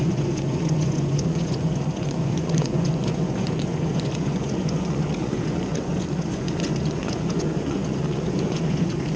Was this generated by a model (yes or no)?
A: yes